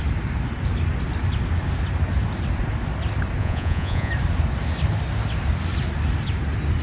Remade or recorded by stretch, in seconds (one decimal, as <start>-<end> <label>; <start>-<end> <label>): 0.0-3.4 recorded; 3.4-4.1 remade; 4.1-6.8 recorded